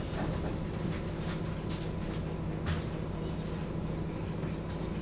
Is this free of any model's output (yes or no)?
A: yes